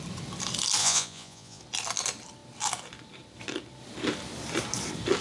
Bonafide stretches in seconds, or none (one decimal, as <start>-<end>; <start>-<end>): 0.0-0.8; 1.6-5.2